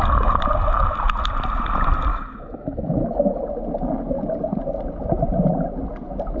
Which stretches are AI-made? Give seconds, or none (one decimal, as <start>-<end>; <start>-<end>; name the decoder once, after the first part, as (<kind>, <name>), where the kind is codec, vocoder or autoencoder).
2.1-3.4 (autoencoder, DAC-VAE)